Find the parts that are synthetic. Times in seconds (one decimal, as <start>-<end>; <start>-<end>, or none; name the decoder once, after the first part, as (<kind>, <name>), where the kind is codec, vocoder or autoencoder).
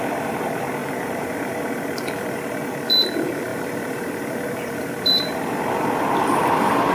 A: 0.8-1.6 (vocoder, BigVGAN v2); 3.5-5.4